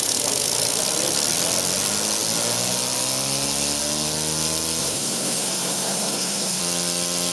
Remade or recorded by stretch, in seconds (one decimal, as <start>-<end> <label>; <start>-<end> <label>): 0.0-4.8 recorded; 4.8-6.6 remade; 6.6-7.3 recorded